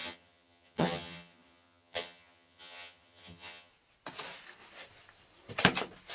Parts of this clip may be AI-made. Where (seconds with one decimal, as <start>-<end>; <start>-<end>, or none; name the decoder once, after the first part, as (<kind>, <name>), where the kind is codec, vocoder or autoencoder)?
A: 0.0-3.7 (vocoder, HiFi-GAN)